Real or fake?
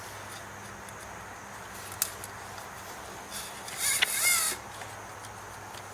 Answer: real